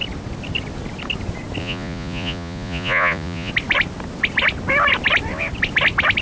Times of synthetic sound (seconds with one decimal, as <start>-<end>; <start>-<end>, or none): 1.6-3.5